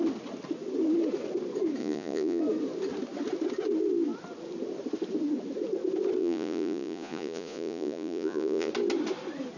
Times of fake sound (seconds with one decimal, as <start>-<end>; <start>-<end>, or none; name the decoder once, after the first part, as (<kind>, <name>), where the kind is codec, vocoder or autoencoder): 1.8-2.4 (vocoder, Vocos); 6.2-8.7